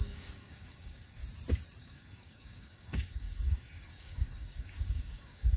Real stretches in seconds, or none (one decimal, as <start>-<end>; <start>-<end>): 1.2-1.8